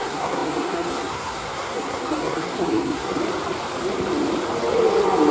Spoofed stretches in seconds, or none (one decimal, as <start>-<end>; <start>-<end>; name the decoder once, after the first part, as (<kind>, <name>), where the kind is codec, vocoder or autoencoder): 0.0-3.2 (codec, SNAC)